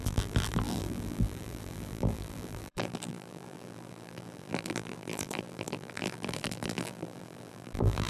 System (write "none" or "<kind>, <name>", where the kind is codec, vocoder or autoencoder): vocoder, BigVGAN v2